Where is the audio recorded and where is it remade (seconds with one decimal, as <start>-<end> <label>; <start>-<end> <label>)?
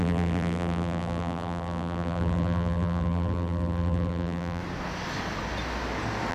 0.0-4.6 remade; 4.6-6.3 recorded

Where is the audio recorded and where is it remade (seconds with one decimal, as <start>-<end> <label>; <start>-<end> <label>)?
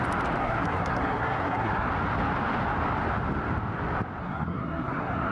0.0-0.4 recorded; 0.4-1.9 remade; 1.9-4.2 recorded; 4.2-5.3 remade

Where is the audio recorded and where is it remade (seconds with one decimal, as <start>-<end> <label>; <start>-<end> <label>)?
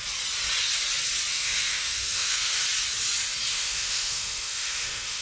0.0-1.3 recorded; 1.3-2.5 remade; 2.5-3.5 recorded; 3.5-5.2 remade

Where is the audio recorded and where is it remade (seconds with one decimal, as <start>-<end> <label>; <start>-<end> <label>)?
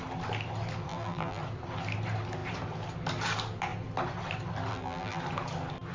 0.0-0.9 recorded; 0.9-1.4 remade; 1.4-4.7 recorded; 4.7-5.2 remade; 5.2-5.9 recorded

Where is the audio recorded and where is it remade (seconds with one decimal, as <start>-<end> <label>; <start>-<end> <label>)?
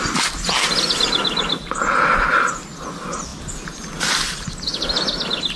0.0-1.5 recorded; 1.5-2.7 remade; 2.7-5.6 recorded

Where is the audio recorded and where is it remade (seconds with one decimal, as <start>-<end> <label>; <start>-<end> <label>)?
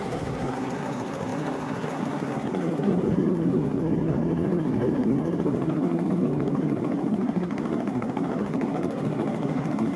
0.0-10.0 remade